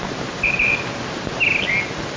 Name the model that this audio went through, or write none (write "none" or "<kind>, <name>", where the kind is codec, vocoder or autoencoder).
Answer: none